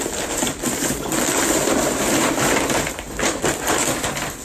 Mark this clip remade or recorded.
remade